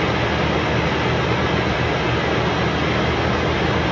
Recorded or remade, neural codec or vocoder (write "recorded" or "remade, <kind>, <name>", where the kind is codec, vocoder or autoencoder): recorded